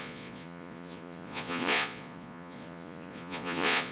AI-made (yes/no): yes